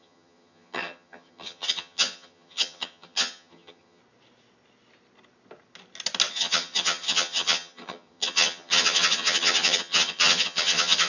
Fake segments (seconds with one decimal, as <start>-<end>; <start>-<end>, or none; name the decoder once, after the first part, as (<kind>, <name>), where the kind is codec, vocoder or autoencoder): 0.0-4.0 (vocoder, HiFi-GAN); 6.3-11.1